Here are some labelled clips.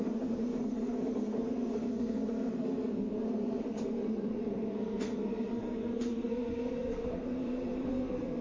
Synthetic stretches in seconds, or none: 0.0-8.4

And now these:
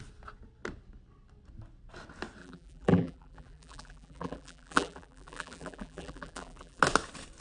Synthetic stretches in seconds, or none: 2.4-6.8

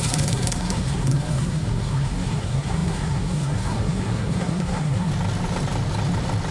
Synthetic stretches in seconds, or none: 0.0-5.1

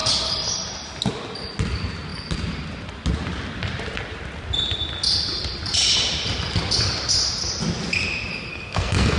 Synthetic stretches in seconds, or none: 8.5-9.2

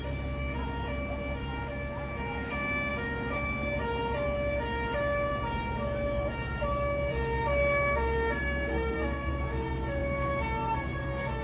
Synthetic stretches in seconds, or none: 8.7-9.4

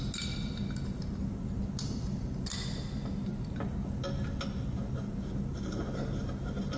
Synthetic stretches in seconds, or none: none

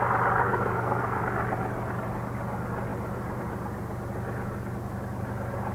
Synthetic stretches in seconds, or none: 0.4-1.2